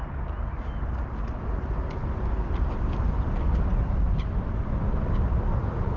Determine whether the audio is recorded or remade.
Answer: recorded